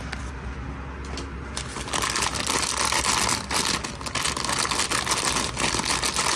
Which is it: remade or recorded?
recorded